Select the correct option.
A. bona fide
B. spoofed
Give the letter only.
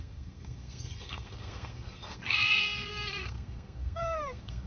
B